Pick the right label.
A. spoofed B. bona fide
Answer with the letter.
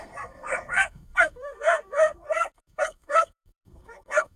A